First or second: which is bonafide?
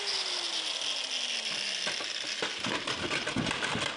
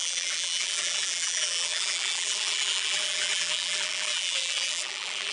first